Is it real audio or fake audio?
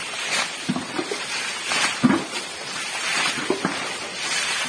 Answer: real